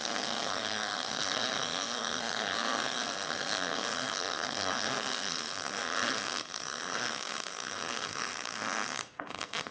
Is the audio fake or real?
fake